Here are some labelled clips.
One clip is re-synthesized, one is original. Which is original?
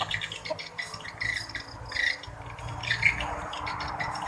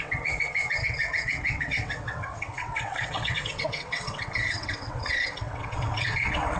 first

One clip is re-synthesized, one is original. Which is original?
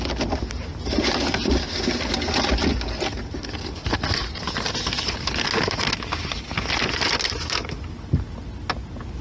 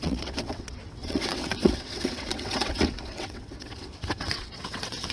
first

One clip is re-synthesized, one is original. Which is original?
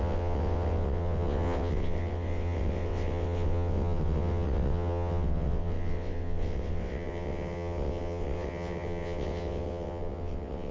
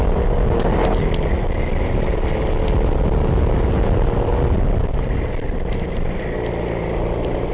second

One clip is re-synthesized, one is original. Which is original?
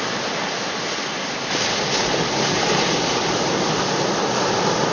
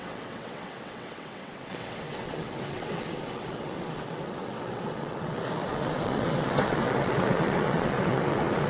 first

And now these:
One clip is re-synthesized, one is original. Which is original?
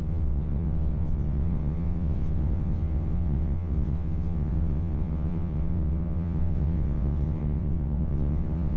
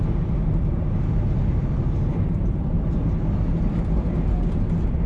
second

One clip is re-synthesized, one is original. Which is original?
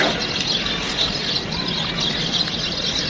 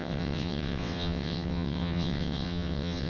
first